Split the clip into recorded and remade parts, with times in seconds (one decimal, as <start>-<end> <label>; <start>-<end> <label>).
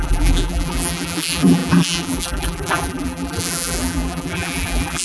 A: 0.0-5.0 remade